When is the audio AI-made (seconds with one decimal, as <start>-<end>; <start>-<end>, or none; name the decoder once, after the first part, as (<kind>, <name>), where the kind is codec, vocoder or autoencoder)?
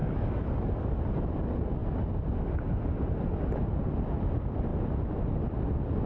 0.0-1.0 (codec, DAC)